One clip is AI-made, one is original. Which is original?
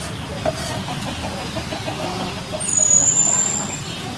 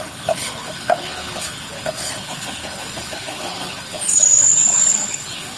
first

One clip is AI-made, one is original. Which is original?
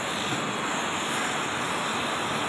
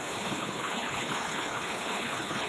first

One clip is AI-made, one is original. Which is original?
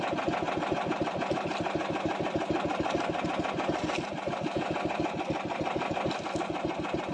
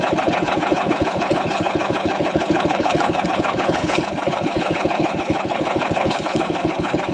first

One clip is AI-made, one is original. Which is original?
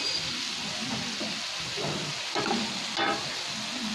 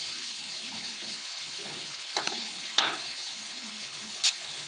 first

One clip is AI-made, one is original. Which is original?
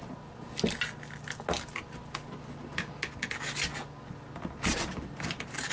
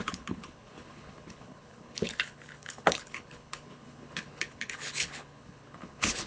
first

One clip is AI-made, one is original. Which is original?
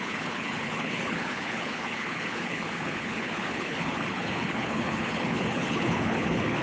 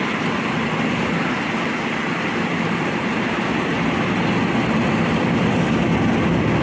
second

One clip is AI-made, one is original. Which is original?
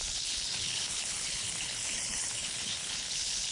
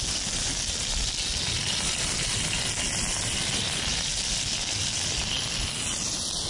second